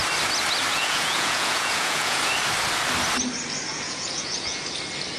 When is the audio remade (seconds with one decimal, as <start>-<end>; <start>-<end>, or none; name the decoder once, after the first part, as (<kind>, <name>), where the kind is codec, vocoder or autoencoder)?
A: 0.7-2.2 (vocoder, Vocos); 3.7-4.6